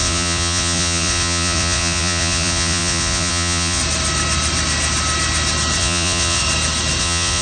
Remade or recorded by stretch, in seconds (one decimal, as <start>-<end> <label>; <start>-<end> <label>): 0.0-3.8 remade; 3.8-5.8 recorded; 5.8-6.4 remade; 6.4-7.0 recorded; 7.0-7.4 remade